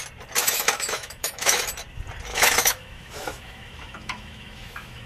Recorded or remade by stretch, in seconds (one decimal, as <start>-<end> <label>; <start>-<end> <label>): 0.0-0.4 recorded; 0.4-1.6 remade; 1.6-2.3 recorded; 2.3-5.1 remade

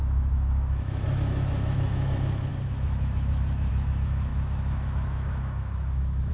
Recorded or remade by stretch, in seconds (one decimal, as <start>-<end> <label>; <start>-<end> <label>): 0.0-6.3 remade

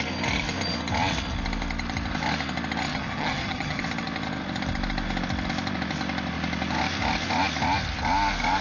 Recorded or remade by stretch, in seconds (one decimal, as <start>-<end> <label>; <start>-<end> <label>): 0.0-2.9 recorded; 2.9-3.8 remade; 3.8-8.6 recorded

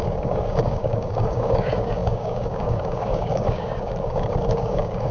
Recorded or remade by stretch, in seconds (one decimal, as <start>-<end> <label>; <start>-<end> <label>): 0.0-5.1 remade

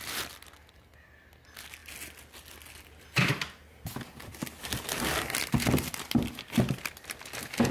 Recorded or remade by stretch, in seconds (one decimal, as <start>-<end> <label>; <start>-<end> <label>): 0.0-7.7 recorded

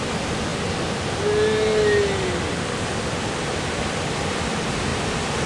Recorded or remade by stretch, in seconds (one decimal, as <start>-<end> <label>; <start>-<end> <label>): 0.0-5.5 recorded

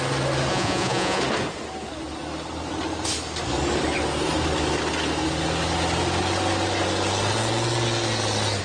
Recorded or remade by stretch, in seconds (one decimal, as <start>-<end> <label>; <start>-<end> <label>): 0.0-0.5 recorded; 0.5-1.2 remade; 1.2-8.6 recorded